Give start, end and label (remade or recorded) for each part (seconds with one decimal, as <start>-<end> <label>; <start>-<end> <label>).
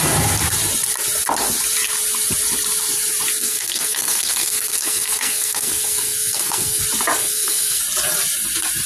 0.0-3.4 recorded; 3.4-6.8 remade; 6.8-7.2 recorded; 7.2-7.8 remade; 7.8-8.9 recorded